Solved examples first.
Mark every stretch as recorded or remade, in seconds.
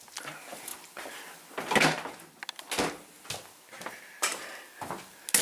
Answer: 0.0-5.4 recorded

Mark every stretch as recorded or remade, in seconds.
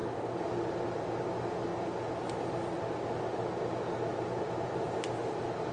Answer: 0.0-5.7 recorded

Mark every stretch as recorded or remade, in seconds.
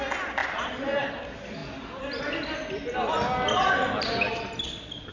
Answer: 0.0-5.1 recorded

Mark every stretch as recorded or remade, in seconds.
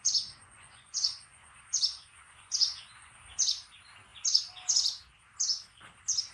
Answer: 0.0-3.1 remade; 3.1-6.3 recorded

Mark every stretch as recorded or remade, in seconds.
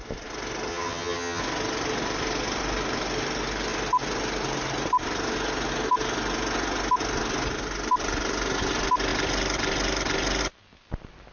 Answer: 0.0-0.7 recorded; 0.7-1.4 remade; 1.4-11.3 recorded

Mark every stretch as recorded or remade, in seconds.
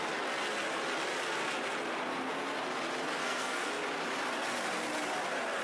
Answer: 0.0-3.2 recorded; 3.2-3.7 remade; 3.7-5.6 recorded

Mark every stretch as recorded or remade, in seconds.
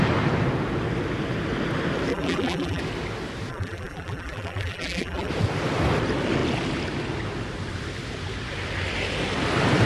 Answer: 0.0-2.1 recorded; 2.1-2.8 remade; 2.8-3.5 recorded; 3.5-5.3 remade; 5.3-9.9 recorded